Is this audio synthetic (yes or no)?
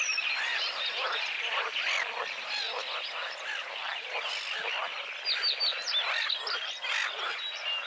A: no